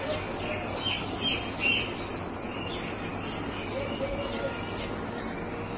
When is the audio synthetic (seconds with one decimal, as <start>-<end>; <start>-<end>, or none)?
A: 2.1-2.7; 3.1-4.0